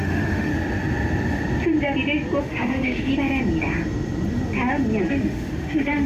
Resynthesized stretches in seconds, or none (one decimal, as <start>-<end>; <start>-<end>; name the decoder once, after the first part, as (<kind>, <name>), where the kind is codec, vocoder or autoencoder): 0.0-0.5 (autoencoder, DAC-VAE); 2.4-3.1; 5.0-6.1